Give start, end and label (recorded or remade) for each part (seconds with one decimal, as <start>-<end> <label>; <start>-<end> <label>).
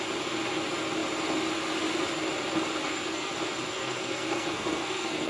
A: 0.0-2.8 recorded; 2.8-3.3 remade; 3.3-3.7 recorded; 3.7-5.3 remade